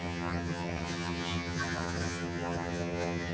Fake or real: fake